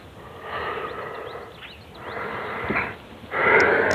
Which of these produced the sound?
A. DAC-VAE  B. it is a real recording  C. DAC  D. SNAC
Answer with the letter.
B